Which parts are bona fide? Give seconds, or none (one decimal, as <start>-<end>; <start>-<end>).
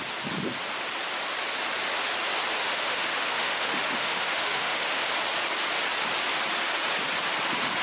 0.0-2.6; 5.1-7.8